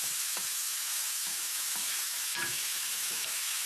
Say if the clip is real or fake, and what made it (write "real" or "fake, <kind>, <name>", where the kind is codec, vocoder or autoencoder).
fake, autoencoder, DAC-VAE